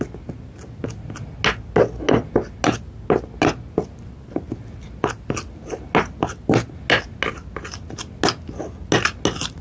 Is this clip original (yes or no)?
yes